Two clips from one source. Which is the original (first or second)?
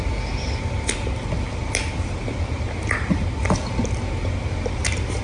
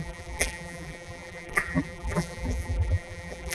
first